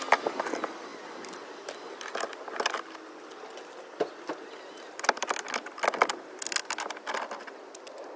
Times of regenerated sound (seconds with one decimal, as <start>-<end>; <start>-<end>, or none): none